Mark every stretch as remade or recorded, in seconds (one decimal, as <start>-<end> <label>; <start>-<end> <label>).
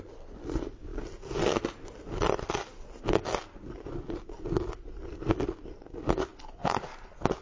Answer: 0.0-7.4 recorded